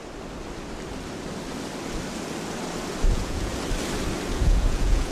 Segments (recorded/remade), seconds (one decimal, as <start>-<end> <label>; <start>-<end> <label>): 0.0-3.1 recorded; 3.1-3.5 remade; 3.5-4.3 recorded; 4.3-5.1 remade